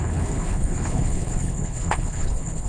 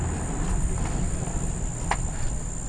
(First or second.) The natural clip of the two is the second